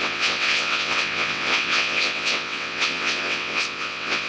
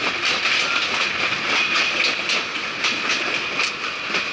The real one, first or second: second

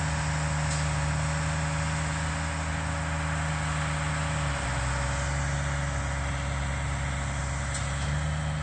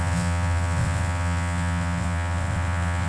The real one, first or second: first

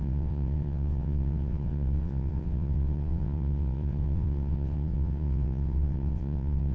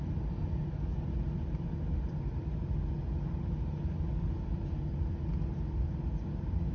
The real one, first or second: second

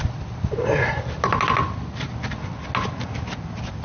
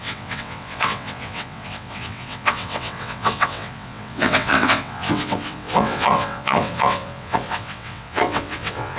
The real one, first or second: first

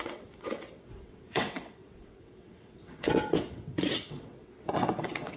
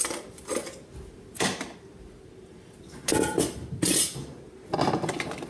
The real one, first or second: second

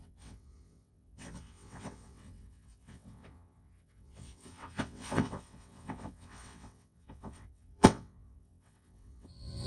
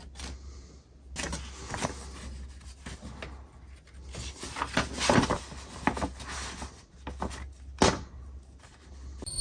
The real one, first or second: second